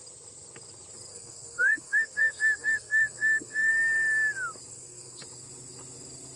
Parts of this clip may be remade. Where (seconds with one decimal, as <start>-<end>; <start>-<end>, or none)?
1.1-3.7; 4.7-5.2